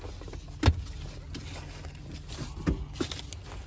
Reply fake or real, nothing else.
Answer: real